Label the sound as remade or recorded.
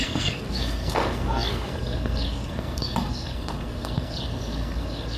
remade